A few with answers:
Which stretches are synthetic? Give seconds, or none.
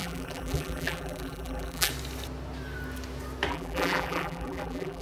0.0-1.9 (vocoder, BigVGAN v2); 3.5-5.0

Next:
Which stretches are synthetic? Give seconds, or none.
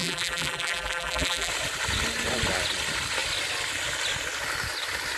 0.0-1.5 (vocoder, BigVGAN v2)